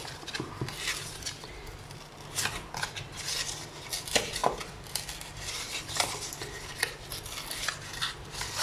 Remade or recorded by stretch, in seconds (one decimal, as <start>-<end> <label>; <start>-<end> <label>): 0.0-8.6 recorded